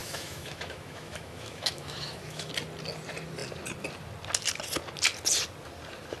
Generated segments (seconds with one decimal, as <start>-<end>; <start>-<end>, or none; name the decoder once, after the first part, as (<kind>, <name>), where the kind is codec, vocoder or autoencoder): 0.0-2.5 (autoencoder, DAC-VAE)